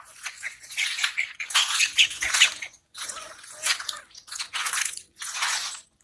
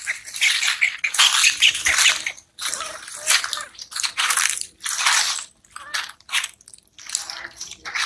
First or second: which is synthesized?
first